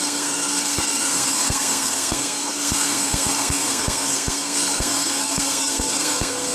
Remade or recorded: remade